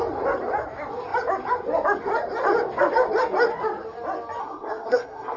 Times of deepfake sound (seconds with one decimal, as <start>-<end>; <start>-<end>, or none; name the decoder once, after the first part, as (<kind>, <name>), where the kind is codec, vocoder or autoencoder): 4.4-5.4 (codec, SNAC)